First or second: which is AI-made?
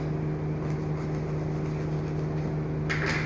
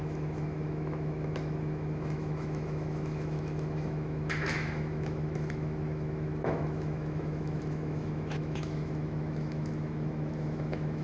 second